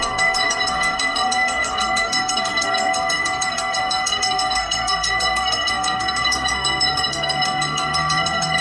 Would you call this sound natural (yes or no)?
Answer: no